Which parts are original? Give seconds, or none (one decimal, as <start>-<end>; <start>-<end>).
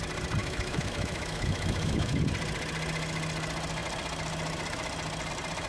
0.0-0.4; 2.2-5.7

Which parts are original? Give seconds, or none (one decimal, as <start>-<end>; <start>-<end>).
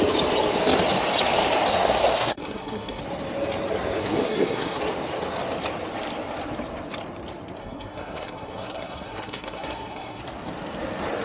0.0-1.7; 3.0-4.0; 4.8-7.6; 10.2-11.2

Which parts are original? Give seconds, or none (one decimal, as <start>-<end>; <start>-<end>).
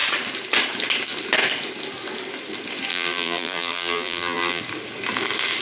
0.0-2.9; 4.6-5.6